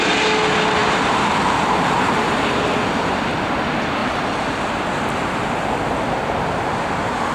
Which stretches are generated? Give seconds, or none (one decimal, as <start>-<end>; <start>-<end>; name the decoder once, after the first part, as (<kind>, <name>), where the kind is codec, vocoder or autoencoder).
0.8-2.8 (vocoder, BigVGAN v2); 4.0-5.8